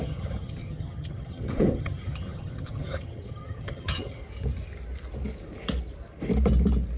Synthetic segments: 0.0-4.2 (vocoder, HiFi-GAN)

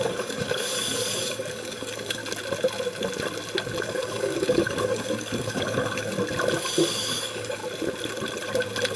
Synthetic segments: 0.0-2.2 (codec, DAC); 3.8-6.1; 6.9-7.6

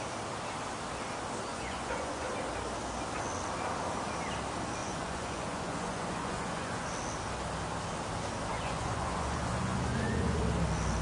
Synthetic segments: 1.5-2.3 (vocoder, Vocos); 4.8-6.9; 8.5-10.4

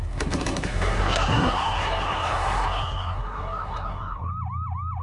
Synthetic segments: 0.0-4.3 (codec, SNAC)

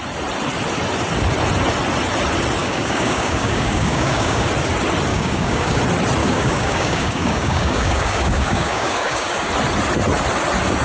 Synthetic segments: 2.6-4.5 (codec, DAC); 5.1-5.8; 6.2-9.5

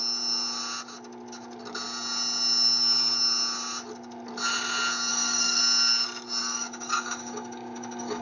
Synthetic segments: 5.1-5.6 (codec, DAC); 6.4-8.2